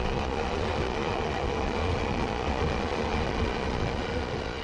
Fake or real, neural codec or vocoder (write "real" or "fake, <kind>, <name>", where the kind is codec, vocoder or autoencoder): fake, vocoder, Vocos